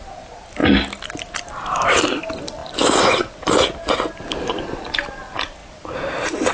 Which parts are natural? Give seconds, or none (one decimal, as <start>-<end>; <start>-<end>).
0.0-6.5